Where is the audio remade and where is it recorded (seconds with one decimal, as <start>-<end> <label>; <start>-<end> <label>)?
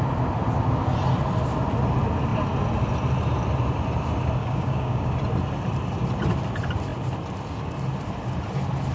0.0-4.4 recorded; 4.4-5.1 remade; 5.1-8.9 recorded